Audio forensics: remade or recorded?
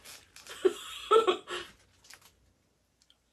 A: recorded